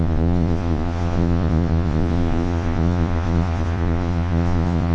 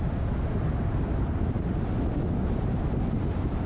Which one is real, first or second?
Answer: second